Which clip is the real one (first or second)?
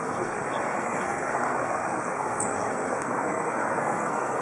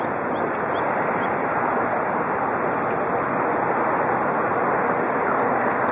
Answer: second